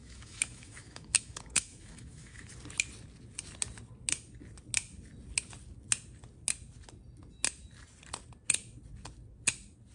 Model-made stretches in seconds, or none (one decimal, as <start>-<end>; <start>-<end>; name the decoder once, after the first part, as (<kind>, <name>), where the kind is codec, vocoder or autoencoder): 0.0-2.5 (autoencoder, DAC-VAE)